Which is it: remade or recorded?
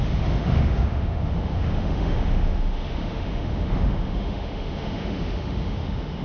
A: remade